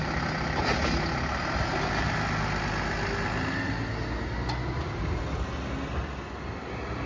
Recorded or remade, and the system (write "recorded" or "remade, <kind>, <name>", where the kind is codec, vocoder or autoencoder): recorded